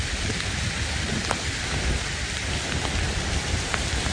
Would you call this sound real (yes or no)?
yes